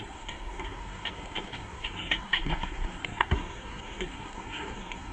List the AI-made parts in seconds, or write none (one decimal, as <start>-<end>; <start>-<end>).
0.0-5.1